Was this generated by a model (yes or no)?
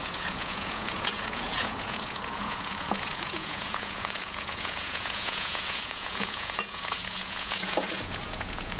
yes